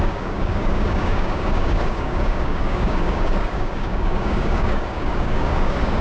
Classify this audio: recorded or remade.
remade